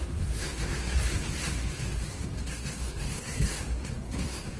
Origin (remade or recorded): remade